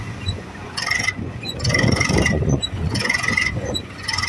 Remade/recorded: remade